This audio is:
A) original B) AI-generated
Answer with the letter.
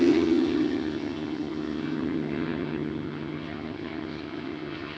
B